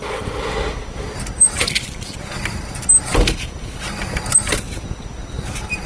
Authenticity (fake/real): real